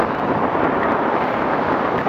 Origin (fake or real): real